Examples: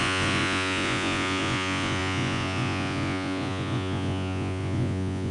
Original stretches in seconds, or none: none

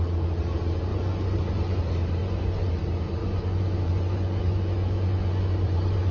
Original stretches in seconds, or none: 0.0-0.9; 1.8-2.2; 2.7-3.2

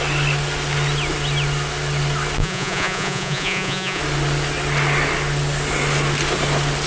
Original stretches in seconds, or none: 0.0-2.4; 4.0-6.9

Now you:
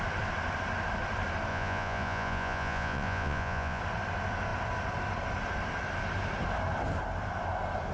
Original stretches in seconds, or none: 0.0-1.5; 3.8-7.9

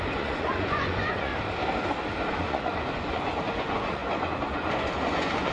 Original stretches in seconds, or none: 1.3-2.3

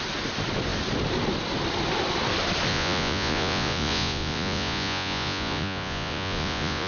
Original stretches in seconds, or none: 0.0-2.7